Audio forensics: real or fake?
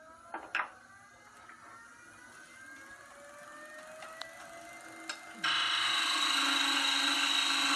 real